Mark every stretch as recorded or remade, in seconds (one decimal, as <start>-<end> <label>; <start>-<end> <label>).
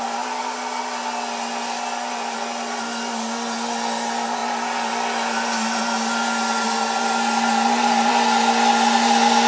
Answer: 0.0-9.5 recorded